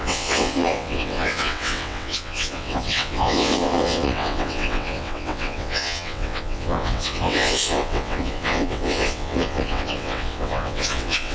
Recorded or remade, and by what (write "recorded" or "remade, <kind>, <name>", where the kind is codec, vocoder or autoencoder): remade, vocoder, WaveNeXt